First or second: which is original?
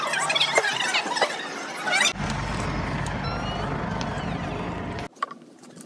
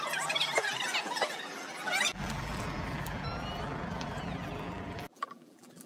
first